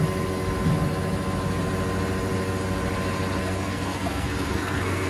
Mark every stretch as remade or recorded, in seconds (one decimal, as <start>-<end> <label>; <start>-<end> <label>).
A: 0.0-3.4 recorded; 3.4-5.1 remade

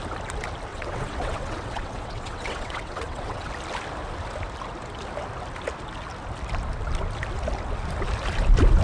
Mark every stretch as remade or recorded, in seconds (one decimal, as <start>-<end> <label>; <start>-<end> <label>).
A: 0.0-0.7 recorded; 0.7-3.5 remade; 3.5-8.8 recorded

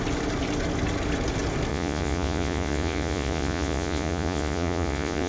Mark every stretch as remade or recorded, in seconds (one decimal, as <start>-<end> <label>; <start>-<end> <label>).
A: 0.0-1.7 recorded; 1.7-5.3 remade

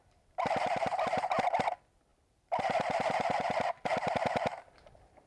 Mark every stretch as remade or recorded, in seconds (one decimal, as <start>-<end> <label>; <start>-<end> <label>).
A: 0.0-1.3 remade; 1.3-2.1 recorded; 2.1-4.1 remade; 4.1-5.3 recorded

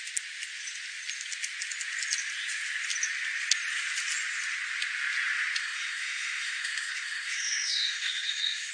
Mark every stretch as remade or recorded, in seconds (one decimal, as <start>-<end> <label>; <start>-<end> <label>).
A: 0.0-5.6 recorded; 5.6-8.7 remade